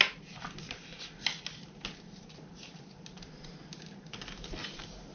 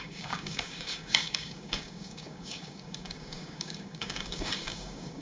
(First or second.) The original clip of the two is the first